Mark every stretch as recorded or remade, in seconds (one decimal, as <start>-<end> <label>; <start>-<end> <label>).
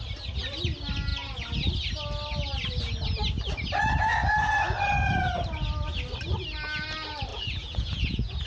0.0-7.3 recorded; 7.3-8.5 remade